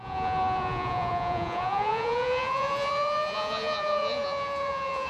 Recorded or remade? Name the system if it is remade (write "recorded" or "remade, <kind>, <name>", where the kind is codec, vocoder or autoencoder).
remade, vocoder, Vocos